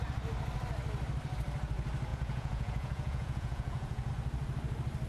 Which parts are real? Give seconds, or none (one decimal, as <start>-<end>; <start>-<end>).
0.0-2.1; 4.1-5.1

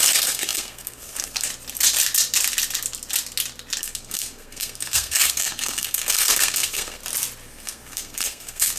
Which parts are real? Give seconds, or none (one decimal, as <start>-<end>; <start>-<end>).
1.5-3.8; 7.0-7.5

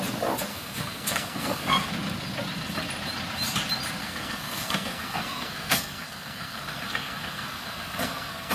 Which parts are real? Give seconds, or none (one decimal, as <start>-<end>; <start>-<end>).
0.0-0.5; 1.9-4.0

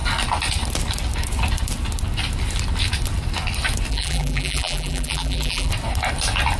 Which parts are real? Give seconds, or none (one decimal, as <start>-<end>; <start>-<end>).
0.0-3.9; 5.7-6.6

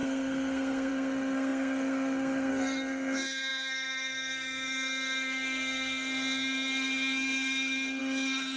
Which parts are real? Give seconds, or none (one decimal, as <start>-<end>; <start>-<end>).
none